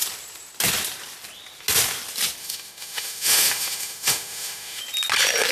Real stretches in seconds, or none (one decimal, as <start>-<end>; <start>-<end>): 0.0-2.4; 4.8-5.5